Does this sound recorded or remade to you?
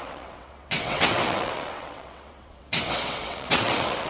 remade